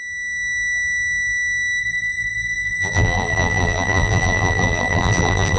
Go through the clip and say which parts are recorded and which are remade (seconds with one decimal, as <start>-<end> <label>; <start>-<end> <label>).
0.0-1.8 recorded; 1.8-5.6 remade